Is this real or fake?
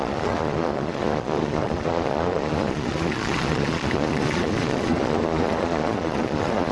fake